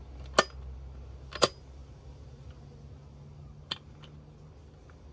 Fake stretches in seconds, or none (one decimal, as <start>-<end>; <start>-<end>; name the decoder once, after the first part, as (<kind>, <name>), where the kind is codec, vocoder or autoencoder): none